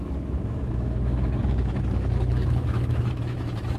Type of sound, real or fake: fake